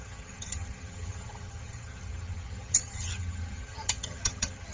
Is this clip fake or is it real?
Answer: fake